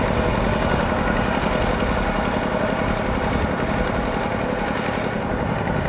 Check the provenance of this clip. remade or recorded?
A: recorded